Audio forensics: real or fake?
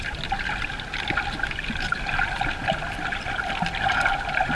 real